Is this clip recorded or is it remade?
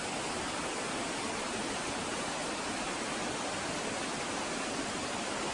recorded